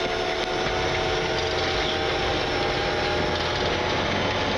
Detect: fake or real real